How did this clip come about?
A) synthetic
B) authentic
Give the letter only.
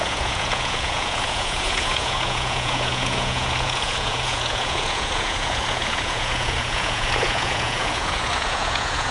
A